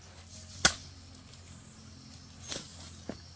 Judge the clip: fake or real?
real